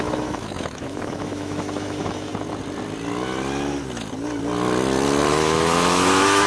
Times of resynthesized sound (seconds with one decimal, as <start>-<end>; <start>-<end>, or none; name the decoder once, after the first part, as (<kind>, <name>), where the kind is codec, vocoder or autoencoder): 0.0-2.3 (autoencoder, DAC-VAE); 5.3-6.5